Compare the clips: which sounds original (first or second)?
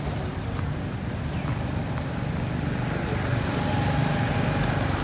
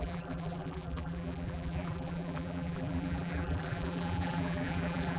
first